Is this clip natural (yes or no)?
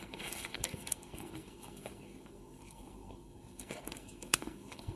no